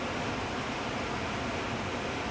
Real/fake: real